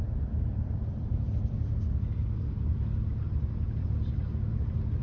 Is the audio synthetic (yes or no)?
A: no